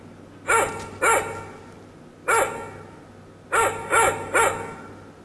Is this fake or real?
real